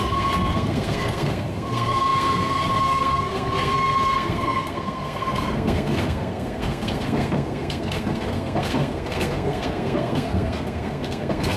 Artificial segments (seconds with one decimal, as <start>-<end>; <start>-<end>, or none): 0.0-11.6